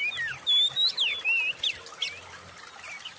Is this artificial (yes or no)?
no